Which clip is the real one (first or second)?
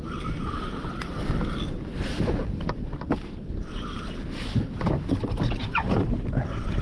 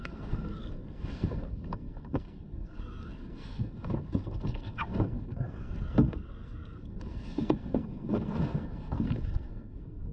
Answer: first